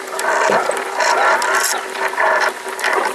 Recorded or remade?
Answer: remade